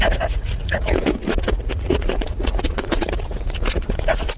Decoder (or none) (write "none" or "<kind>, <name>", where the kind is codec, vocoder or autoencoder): vocoder, Vocos